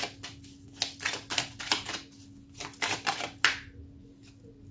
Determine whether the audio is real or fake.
real